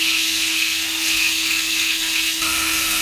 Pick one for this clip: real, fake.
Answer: fake